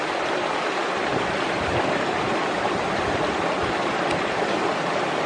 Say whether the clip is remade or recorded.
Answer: recorded